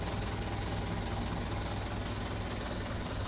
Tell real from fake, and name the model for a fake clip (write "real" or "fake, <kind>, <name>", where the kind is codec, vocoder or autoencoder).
real